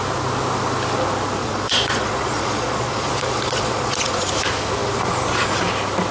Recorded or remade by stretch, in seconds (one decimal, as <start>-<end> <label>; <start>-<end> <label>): 0.0-1.4 recorded; 1.4-4.3 remade; 4.3-6.1 recorded